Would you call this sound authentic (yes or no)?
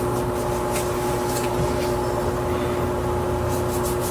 yes